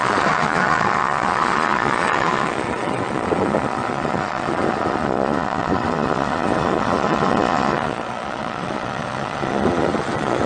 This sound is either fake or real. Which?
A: fake